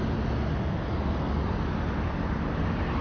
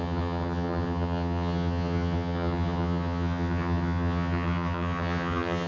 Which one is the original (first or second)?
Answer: first